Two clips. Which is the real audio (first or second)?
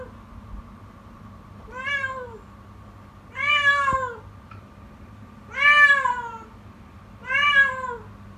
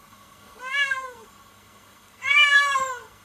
first